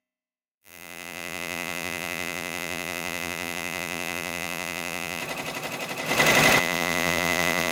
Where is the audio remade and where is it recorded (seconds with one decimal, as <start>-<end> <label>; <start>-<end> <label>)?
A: 0.0-5.2 remade; 5.2-6.6 recorded; 6.6-7.7 remade